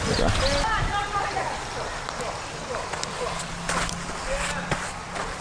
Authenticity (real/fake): real